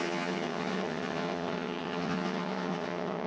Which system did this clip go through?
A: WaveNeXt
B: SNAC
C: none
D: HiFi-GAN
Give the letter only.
D